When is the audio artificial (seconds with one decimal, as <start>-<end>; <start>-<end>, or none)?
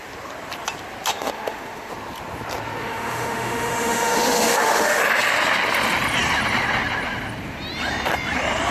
1.1-1.9; 2.8-5.0